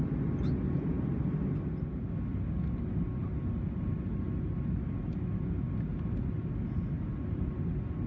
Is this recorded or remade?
recorded